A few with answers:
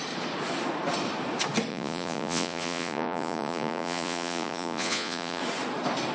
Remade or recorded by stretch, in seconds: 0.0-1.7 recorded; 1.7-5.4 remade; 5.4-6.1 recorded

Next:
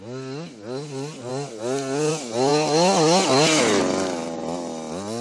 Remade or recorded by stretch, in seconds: 0.0-5.2 recorded

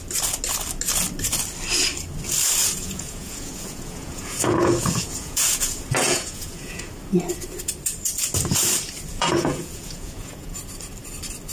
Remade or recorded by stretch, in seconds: 0.0-2.6 recorded; 2.6-6.9 remade; 6.9-9.1 recorded; 9.1-10.6 remade; 10.6-11.5 recorded